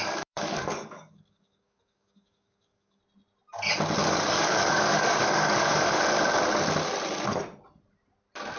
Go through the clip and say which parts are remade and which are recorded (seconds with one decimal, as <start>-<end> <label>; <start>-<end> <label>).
0.0-3.0 remade; 3.0-4.0 recorded; 4.0-6.0 remade; 6.0-8.6 recorded